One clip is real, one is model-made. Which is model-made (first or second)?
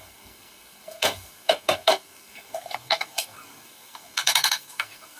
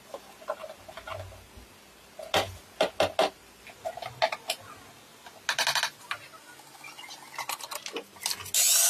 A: first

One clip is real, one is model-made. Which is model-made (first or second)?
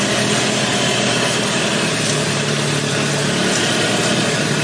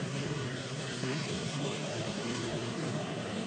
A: second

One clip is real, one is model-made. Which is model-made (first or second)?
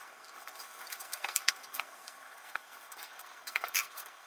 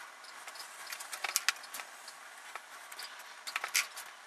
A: first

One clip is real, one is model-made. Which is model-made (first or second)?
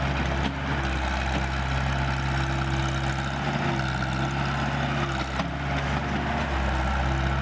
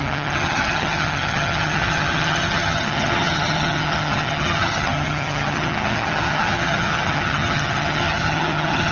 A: second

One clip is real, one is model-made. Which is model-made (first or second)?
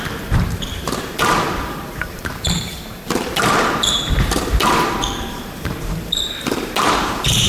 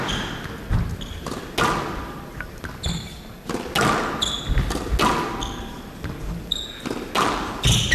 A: first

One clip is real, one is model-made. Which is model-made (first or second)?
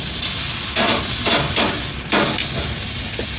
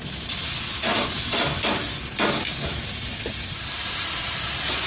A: second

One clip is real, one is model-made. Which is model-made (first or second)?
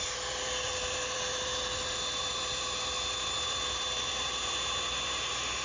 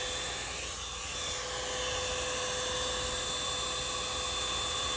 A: first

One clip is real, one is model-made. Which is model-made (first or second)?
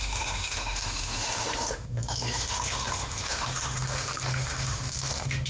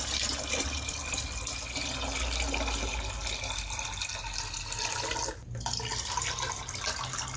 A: first